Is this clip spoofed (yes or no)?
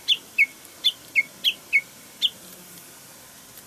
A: yes